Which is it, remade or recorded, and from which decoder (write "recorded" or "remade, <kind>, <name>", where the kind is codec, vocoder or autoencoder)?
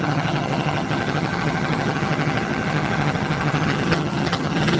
remade, vocoder, HiFi-GAN